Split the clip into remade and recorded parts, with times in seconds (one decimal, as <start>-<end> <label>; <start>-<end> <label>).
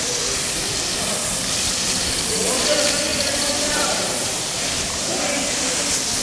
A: 0.0-3.1 recorded; 3.1-4.9 remade; 4.9-6.2 recorded